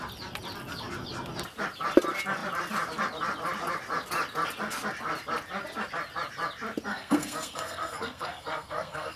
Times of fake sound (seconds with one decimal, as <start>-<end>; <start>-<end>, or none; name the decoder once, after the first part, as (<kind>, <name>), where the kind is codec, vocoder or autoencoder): 6.9-9.2 (codec, SNAC)